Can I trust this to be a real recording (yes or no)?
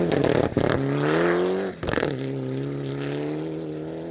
yes